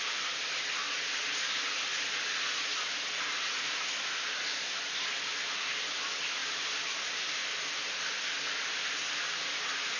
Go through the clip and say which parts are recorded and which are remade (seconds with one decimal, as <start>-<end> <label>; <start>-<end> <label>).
0.0-10.0 recorded